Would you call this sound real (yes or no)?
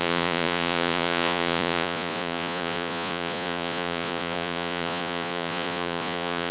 no